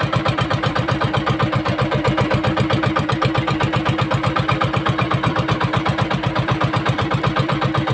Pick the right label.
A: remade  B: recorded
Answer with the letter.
A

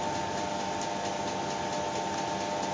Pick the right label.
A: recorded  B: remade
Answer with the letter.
A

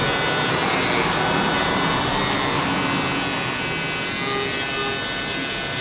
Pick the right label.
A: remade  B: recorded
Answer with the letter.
B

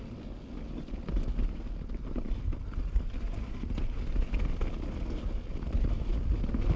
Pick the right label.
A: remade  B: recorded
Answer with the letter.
B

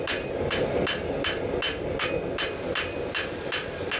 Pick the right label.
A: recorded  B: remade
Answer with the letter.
A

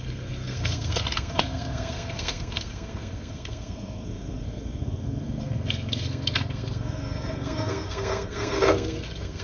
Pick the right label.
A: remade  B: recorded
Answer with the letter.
A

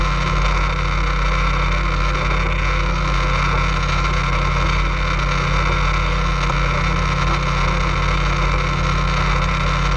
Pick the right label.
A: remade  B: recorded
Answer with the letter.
B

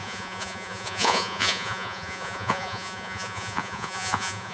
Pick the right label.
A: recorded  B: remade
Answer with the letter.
B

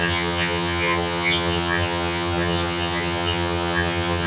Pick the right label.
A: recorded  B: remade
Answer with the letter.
B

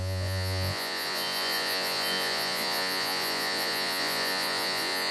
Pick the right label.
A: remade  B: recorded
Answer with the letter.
A